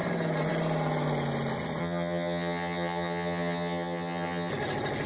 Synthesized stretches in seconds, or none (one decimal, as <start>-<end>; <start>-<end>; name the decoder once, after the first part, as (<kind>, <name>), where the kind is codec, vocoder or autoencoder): 1.8-4.5 (vocoder, HiFi-GAN)